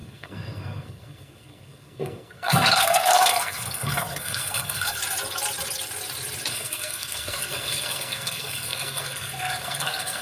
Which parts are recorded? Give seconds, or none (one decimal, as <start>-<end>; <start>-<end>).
5.0-6.5